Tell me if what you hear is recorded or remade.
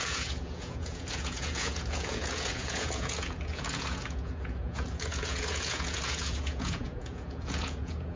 remade